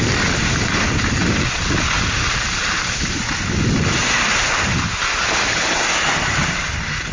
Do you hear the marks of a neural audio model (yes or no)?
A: no